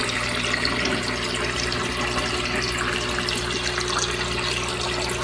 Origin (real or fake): real